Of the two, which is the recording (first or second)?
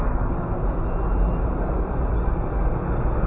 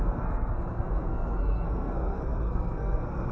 first